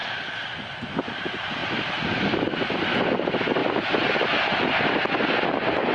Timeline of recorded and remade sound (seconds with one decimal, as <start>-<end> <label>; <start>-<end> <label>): 0.0-0.9 remade; 0.9-1.6 recorded; 1.6-2.9 remade; 2.9-5.9 recorded